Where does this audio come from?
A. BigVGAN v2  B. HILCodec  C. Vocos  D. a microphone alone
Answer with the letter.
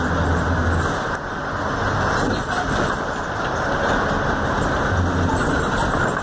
D